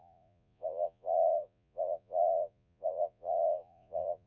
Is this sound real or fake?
fake